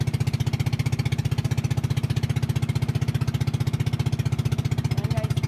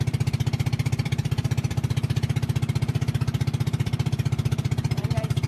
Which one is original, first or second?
first